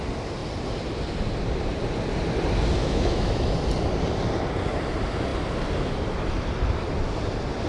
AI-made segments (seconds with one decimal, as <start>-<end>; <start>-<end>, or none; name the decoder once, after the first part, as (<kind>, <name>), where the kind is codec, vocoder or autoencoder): 2.8-3.4 (autoencoder, DAC-VAE)